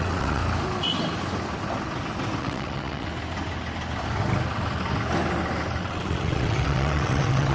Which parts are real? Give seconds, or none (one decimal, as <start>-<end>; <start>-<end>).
0.4-2.4; 3.1-5.8